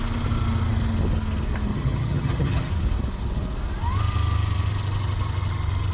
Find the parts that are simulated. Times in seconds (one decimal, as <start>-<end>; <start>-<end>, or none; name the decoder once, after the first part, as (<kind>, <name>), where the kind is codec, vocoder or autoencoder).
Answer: 1.7-2.7 (vocoder, HiFi-GAN)